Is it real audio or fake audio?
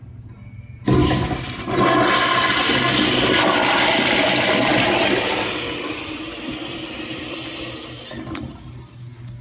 real